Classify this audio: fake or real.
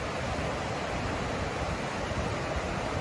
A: real